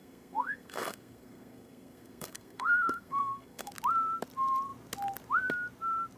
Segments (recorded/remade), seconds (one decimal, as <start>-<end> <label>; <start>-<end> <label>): 0.0-3.7 remade; 3.7-6.2 recorded